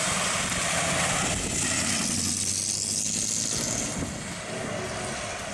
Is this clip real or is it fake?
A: real